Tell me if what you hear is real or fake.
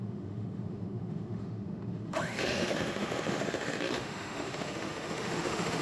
fake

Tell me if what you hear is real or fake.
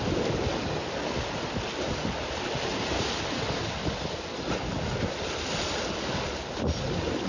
real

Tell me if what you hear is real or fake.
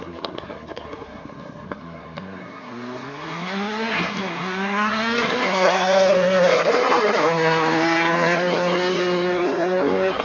fake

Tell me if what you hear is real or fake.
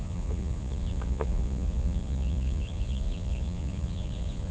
fake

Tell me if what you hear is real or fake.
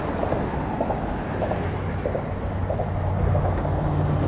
real